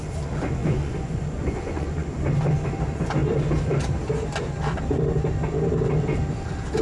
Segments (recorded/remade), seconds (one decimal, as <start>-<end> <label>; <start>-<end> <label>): 0.0-0.6 recorded; 0.6-2.1 remade; 2.1-6.8 recorded